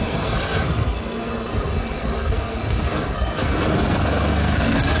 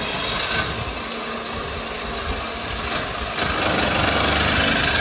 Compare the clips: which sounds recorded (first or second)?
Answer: second